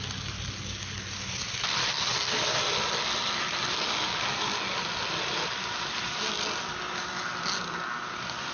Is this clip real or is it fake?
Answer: real